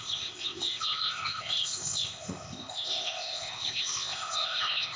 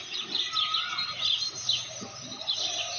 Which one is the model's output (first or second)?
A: first